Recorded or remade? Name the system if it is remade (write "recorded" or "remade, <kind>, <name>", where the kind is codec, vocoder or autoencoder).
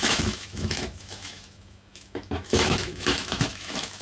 remade, autoencoder, DAC-VAE